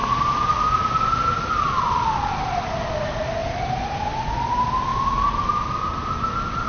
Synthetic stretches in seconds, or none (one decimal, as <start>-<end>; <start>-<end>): none